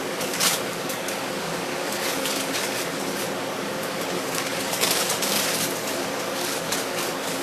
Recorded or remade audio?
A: remade